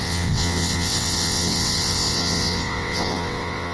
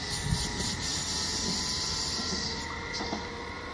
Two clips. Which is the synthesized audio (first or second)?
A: first